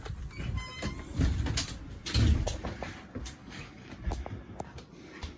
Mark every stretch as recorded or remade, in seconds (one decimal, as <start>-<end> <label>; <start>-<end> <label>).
0.0-3.4 recorded; 3.4-3.9 remade; 3.9-5.4 recorded